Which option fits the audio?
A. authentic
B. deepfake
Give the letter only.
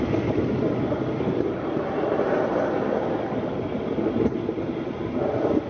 A